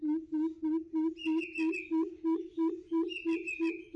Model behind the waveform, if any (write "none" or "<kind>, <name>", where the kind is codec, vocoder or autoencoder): none